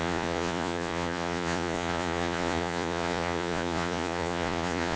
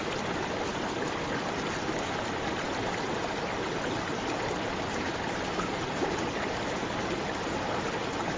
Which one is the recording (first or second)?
second